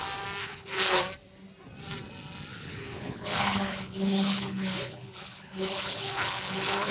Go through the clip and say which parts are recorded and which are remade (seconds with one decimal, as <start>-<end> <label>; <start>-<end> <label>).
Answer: 0.0-0.4 recorded; 0.4-1.0 remade; 1.0-2.5 recorded; 2.5-6.9 remade